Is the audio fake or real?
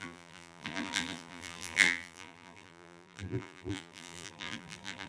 fake